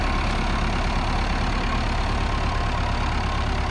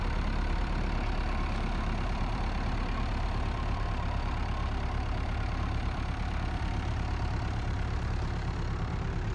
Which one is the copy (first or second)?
second